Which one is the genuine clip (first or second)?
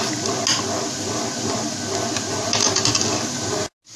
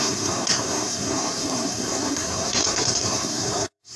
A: first